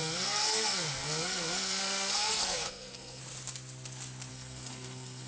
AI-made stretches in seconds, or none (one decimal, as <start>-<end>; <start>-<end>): 0.0-3.2; 4.3-5.3